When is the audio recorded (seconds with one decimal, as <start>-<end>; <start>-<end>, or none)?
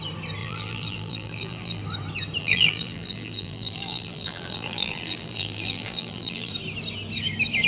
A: 0.0-0.4; 1.8-2.4; 6.5-7.7